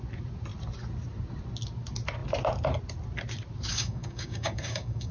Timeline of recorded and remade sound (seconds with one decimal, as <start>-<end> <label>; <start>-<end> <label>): 0.0-3.7 recorded; 3.7-5.1 remade